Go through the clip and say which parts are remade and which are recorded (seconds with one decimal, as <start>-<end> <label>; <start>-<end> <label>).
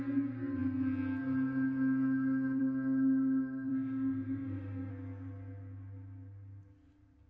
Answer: 0.0-3.7 recorded; 3.7-4.9 remade; 4.9-7.3 recorded